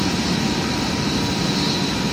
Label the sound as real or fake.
real